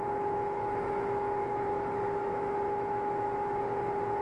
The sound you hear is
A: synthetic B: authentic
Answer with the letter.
A